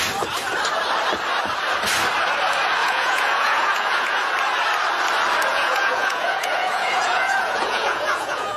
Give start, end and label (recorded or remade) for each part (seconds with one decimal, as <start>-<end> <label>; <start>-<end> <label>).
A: 0.0-2.8 recorded; 2.8-4.3 remade; 4.3-5.5 recorded; 5.5-8.6 remade